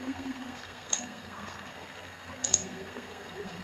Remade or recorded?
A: remade